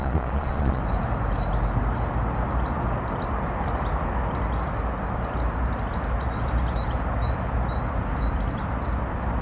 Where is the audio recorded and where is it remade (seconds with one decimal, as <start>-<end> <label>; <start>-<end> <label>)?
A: 0.0-0.8 remade; 0.8-9.4 recorded